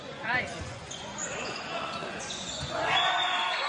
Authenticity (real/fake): fake